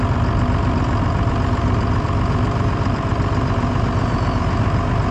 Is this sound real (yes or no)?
no